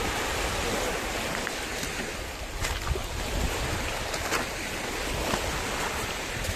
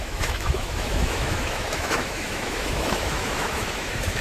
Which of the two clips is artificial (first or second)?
second